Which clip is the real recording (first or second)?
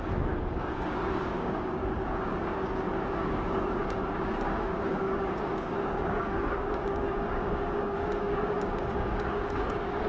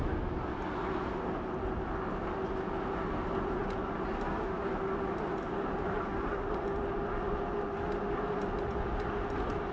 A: second